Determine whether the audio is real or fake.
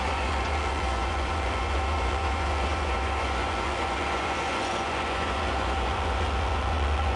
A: fake